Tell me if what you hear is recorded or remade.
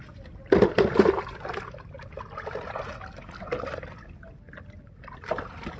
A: recorded